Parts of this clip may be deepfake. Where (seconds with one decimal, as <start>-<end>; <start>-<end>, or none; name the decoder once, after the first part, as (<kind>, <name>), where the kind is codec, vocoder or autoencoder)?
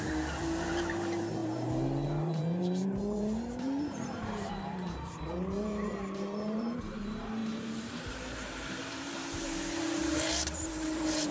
0.0-11.3 (vocoder, BigVGAN v2)